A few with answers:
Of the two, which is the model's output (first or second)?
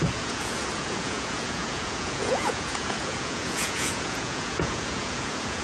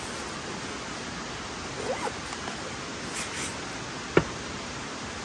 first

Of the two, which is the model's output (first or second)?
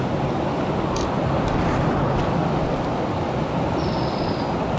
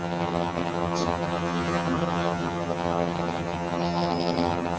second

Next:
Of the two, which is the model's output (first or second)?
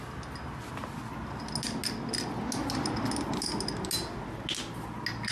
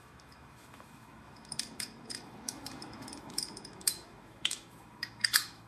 second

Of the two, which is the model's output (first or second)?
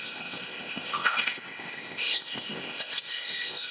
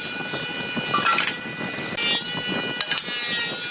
first